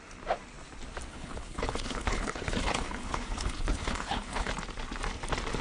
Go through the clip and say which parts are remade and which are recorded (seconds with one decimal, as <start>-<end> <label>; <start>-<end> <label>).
0.0-1.1 recorded; 1.1-4.5 remade; 4.5-5.6 recorded